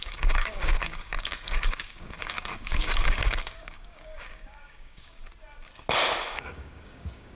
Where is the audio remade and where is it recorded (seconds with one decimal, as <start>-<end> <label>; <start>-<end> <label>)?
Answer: 0.0-5.2 remade; 5.2-6.2 recorded; 6.2-7.3 remade